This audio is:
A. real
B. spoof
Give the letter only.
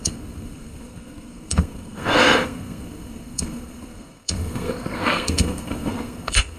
B